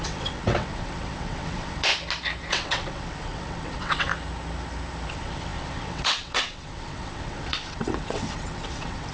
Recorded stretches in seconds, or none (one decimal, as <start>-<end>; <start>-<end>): 1.9-2.5; 4.1-5.1